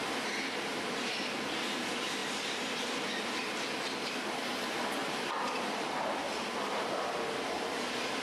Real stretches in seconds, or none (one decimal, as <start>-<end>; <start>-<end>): 0.0-8.2